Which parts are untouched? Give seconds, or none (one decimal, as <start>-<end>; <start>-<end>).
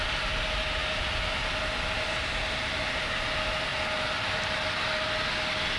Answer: 0.0-5.8